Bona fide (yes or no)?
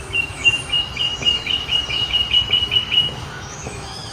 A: no